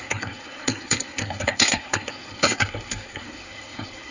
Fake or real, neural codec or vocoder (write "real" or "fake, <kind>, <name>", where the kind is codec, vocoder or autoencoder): fake, codec, SNAC